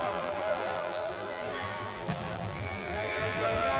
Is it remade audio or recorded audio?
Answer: remade